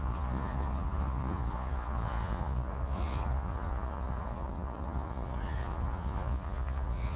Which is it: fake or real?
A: fake